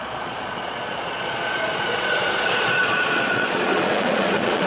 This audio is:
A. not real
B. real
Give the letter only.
A